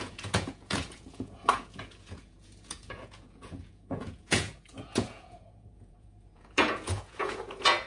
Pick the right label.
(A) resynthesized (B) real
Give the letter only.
A